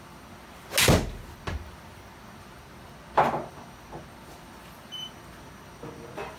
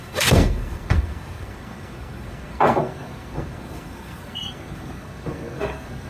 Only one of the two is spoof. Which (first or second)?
second